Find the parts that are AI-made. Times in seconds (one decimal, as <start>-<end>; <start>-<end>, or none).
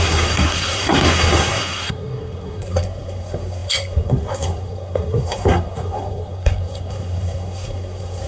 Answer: 0.0-8.3